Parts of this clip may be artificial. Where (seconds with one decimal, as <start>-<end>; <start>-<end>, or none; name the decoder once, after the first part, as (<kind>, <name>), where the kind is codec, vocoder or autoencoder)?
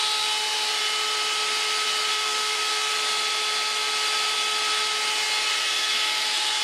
2.1-2.9 (codec, SNAC); 5.5-6.6